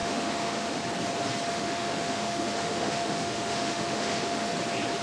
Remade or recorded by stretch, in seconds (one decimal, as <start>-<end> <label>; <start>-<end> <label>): 0.0-0.8 remade; 0.8-1.5 recorded; 1.5-4.5 remade; 4.5-5.0 recorded

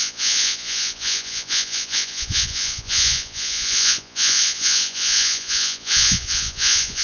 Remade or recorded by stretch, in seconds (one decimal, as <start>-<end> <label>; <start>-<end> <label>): 0.0-7.0 remade